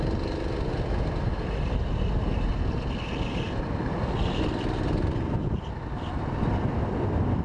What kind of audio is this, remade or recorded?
recorded